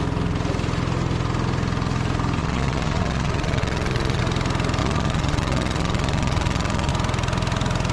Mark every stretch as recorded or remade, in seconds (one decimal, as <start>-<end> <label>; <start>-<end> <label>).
0.0-2.4 recorded; 2.4-4.2 remade; 4.2-4.8 recorded; 4.8-6.9 remade; 6.9-7.9 recorded